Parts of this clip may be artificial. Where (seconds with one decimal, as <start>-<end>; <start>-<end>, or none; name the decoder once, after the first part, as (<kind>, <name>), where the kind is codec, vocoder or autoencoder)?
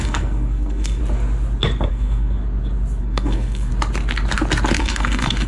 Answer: 0.0-1.0 (codec, SNAC); 1.9-2.4; 3.0-3.7; 4.8-5.5